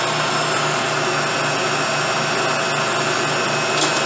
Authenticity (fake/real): real